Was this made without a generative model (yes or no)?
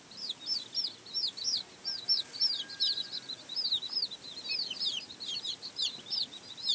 yes